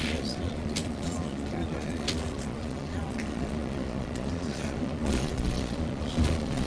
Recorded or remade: remade